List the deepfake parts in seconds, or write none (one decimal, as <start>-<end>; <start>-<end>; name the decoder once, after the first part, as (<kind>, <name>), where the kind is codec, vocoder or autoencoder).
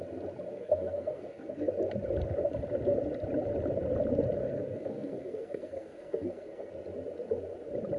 0.5-1.7 (codec, SNAC); 4.4-6.7